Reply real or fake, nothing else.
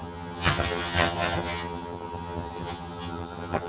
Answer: fake